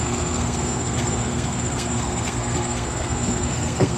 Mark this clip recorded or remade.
remade